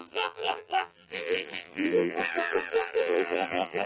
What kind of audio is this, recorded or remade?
remade